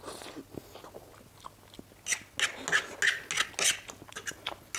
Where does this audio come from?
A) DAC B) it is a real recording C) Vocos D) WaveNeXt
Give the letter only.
B